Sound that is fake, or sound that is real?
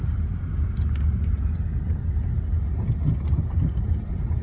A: real